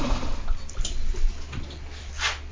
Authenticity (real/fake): fake